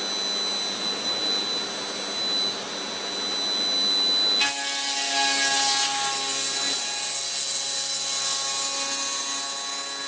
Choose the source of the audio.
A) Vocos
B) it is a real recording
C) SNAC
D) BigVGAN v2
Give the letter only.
B